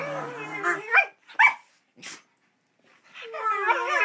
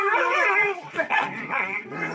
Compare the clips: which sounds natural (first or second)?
first